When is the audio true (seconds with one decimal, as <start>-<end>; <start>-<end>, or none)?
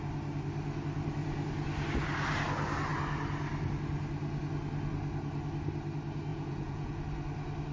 0.0-6.3; 7.0-7.7